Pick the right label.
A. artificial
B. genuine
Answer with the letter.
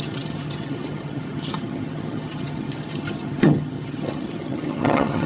A